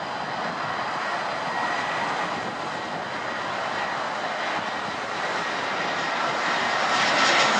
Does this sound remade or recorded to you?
recorded